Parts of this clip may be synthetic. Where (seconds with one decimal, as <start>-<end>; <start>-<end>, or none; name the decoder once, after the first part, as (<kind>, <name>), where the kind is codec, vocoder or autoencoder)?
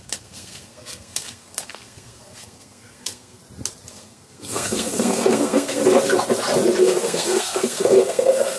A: 0.0-3.4 (codec, SNAC); 3.9-5.8; 6.8-8.6